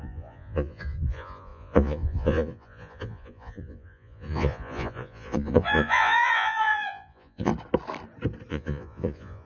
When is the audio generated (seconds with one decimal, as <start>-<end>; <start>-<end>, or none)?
0.0-7.5; 8.5-9.5